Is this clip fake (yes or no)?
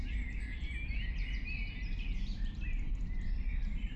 yes